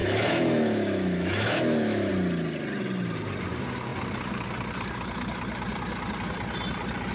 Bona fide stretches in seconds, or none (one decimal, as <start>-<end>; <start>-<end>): 2.1-7.1